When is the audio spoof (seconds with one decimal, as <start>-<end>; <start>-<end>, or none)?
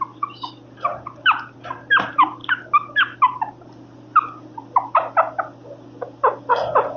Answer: 0.0-2.4; 6.4-7.0